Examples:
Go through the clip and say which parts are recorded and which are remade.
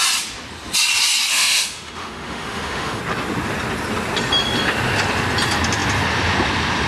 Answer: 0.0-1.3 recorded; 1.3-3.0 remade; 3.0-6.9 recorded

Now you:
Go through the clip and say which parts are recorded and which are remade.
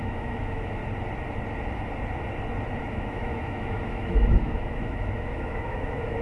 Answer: 0.0-0.8 remade; 0.8-2.8 recorded; 2.8-6.2 remade